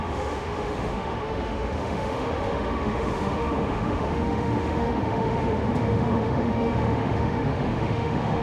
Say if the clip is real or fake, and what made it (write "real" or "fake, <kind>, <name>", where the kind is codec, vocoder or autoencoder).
fake, autoencoder, DAC-VAE